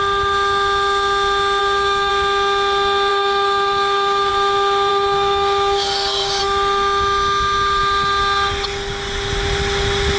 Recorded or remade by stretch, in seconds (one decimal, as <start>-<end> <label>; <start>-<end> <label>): 0.0-1.6 recorded; 1.6-2.1 remade; 2.1-3.1 recorded; 3.1-4.3 remade; 4.3-4.9 recorded; 4.9-6.4 remade; 6.4-10.2 recorded